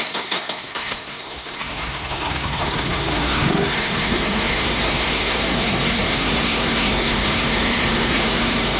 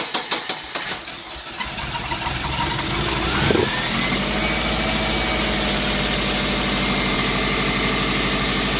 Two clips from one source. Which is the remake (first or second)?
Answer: first